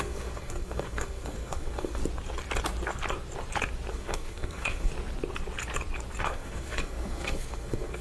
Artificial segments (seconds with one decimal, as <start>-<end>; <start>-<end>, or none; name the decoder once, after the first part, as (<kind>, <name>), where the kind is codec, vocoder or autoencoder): 0.0-2.0 (codec, SNAC); 3.9-4.9; 6.2-8.0